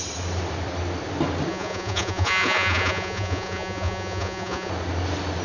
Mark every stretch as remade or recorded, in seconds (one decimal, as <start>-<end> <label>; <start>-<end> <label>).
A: 0.0-1.5 recorded; 1.5-4.7 remade; 4.7-5.4 recorded